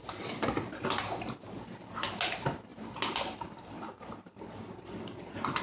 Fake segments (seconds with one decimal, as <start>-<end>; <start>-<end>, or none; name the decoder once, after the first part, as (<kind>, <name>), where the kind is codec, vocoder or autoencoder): none